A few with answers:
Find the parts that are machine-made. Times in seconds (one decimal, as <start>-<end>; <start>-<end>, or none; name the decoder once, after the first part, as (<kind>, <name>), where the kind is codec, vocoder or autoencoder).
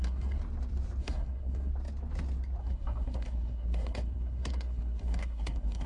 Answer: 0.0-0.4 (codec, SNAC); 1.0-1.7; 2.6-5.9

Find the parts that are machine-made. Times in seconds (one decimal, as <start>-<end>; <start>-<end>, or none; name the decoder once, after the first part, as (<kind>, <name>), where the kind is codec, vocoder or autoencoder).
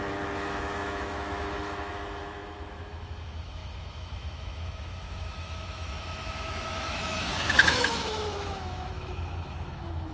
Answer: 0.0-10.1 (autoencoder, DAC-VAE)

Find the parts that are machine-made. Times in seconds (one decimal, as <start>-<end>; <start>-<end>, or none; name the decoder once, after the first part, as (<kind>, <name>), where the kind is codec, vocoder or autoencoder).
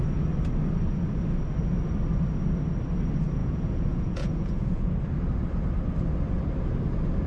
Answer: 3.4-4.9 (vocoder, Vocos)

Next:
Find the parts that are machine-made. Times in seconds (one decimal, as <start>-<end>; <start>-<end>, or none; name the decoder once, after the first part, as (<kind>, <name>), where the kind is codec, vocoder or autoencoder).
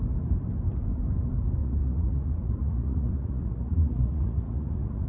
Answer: 1.6-5.1 (vocoder, Vocos)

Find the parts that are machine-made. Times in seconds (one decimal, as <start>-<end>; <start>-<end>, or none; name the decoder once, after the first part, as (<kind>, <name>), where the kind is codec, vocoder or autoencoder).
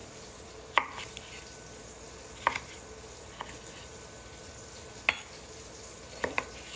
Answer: none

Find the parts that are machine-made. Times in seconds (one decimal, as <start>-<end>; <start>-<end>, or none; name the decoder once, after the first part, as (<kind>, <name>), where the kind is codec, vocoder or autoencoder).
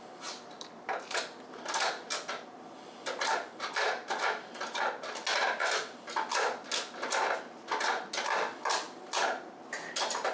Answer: none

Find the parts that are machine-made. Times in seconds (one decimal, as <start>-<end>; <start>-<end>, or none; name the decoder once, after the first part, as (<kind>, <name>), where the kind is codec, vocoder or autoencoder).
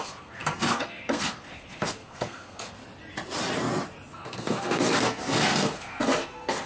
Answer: 0.0-2.8 (codec, SNAC); 4.1-6.7